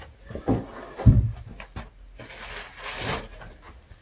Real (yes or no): yes